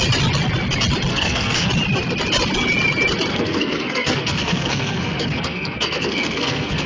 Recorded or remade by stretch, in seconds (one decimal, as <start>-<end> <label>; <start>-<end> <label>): 0.0-1.1 recorded; 1.1-1.7 remade; 1.7-3.3 recorded; 3.3-6.9 remade